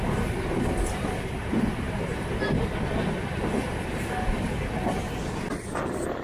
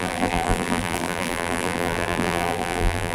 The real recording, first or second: first